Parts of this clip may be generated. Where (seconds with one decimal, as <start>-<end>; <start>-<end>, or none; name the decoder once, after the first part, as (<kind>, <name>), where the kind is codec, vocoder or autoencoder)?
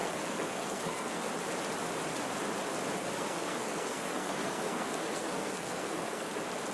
0.0-1.3 (codec, SNAC); 3.0-6.3